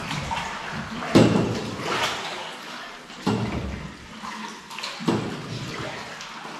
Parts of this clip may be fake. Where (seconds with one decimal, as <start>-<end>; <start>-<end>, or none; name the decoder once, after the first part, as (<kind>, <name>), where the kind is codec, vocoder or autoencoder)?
2.2-2.9 (codec, DAC)